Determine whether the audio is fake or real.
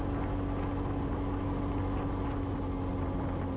real